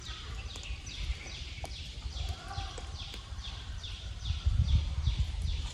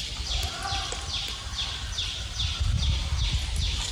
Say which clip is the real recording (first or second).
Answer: second